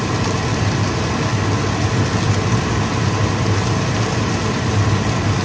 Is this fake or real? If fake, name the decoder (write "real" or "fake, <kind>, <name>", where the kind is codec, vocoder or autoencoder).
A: real